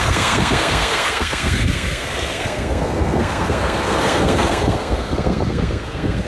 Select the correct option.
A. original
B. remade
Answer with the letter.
B